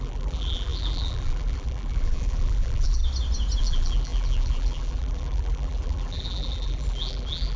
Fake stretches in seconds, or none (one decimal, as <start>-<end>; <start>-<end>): 0.0-3.0; 3.6-7.6